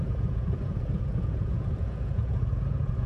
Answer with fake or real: fake